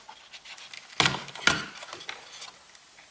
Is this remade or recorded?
recorded